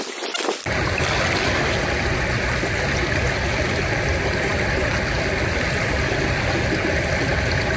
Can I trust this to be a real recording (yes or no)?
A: yes